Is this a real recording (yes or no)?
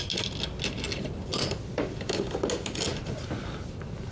yes